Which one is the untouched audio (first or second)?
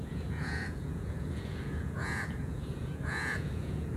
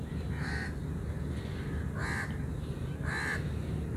second